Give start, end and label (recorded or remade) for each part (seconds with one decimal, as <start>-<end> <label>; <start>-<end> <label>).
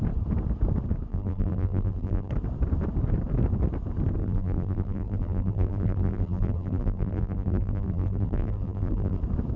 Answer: 0.0-1.1 recorded; 1.1-2.3 remade; 2.3-4.2 recorded; 4.2-9.2 remade; 9.2-9.6 recorded